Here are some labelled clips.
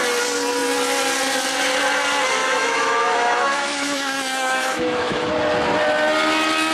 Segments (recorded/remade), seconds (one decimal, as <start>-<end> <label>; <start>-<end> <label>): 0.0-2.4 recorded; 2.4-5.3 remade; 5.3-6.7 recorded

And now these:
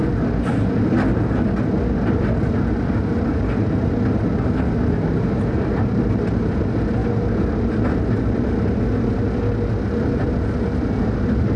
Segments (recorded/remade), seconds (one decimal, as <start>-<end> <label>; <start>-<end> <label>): 0.0-11.6 recorded

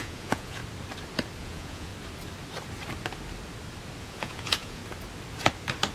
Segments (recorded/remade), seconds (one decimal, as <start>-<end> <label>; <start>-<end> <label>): 0.0-0.6 remade; 0.6-1.4 recorded; 1.4-1.9 remade; 1.9-4.0 recorded; 4.0-4.8 remade; 4.8-5.9 recorded

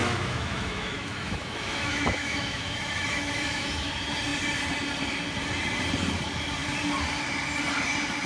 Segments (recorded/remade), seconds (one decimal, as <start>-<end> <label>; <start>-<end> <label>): 0.0-3.9 remade; 3.9-8.3 recorded

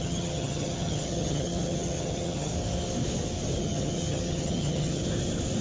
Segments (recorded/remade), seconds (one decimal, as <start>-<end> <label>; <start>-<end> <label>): 0.0-2.5 remade; 2.5-3.6 recorded; 3.6-5.0 remade; 5.0-5.6 recorded

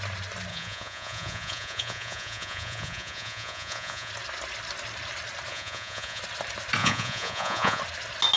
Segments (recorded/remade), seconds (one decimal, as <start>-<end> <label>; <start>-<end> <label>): 0.0-0.5 recorded; 0.5-4.1 remade; 4.1-5.5 recorded; 5.5-6.2 remade; 6.2-6.8 recorded; 6.8-7.8 remade; 7.8-8.4 recorded